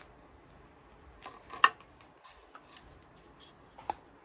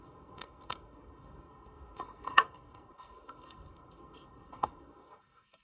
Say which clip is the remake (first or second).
second